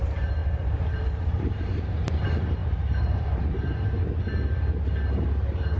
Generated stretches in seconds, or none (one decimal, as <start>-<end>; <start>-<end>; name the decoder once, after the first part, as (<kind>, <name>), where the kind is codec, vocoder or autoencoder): 0.4-1.4 (vocoder, BigVGAN v2); 2.6-4.0